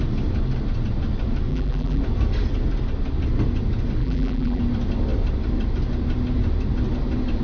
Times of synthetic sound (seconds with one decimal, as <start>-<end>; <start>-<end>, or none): 1.5-2.0; 4.0-4.6

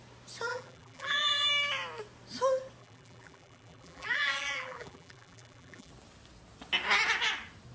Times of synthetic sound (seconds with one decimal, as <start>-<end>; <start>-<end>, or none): 0.5-1.5; 2.8-5.9

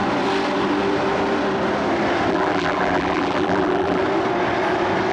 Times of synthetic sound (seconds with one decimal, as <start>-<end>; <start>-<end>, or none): 2.3-4.0

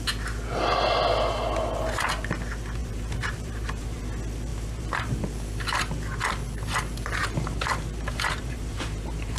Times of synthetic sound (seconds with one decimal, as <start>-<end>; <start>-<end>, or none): 2.8-4.0; 4.5-5.2; 7.2-9.4